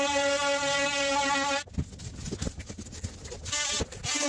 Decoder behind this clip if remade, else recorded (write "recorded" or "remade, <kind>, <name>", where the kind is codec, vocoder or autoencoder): recorded